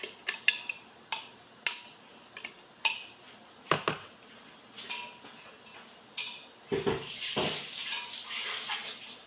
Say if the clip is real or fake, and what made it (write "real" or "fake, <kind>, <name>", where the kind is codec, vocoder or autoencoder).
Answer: real